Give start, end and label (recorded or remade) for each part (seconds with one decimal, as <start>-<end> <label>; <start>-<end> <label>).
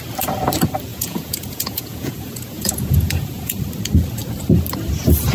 0.0-0.9 recorded; 0.9-3.6 remade; 3.6-5.3 recorded